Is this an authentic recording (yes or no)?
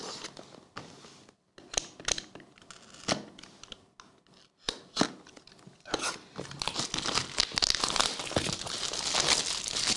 yes